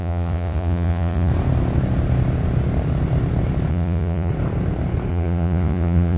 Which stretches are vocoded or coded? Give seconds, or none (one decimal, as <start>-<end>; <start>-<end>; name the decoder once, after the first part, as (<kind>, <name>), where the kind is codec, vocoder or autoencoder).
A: 0.0-1.3 (vocoder, Vocos); 3.7-4.3; 5.1-6.2